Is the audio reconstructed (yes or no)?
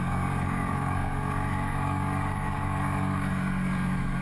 yes